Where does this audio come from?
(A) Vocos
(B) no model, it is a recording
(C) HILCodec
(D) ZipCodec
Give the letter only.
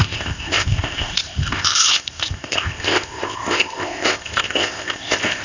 D